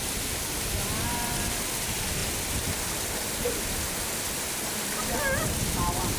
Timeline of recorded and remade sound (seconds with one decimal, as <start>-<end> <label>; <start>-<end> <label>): 0.0-6.2 recorded